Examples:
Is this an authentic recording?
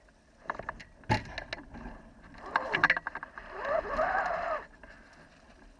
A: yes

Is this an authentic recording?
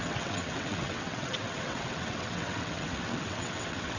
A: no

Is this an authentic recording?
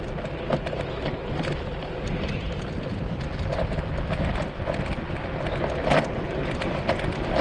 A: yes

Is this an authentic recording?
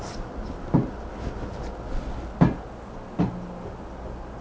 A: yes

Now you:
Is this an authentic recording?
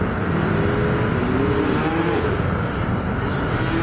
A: yes